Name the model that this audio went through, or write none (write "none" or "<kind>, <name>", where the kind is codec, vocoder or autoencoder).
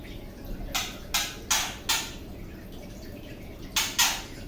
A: none